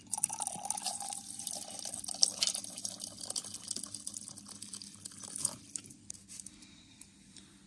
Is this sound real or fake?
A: real